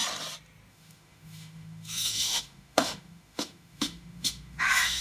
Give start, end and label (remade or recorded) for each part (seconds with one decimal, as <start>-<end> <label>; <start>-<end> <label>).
0.0-0.7 recorded; 0.7-5.0 remade